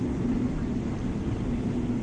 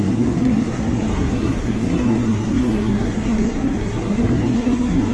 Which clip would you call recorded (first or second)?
first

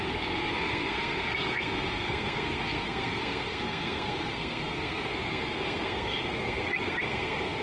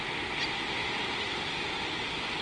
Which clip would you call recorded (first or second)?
second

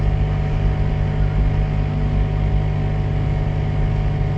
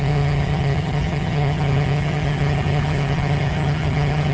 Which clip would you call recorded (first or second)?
first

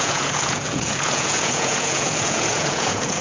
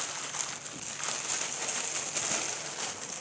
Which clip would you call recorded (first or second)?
second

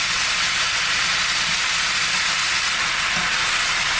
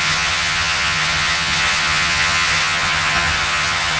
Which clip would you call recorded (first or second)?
first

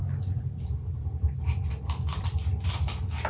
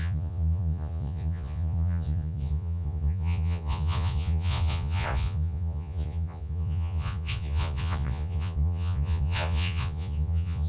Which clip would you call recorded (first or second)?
first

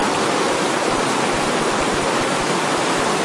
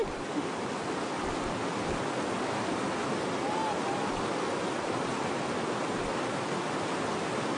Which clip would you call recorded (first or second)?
second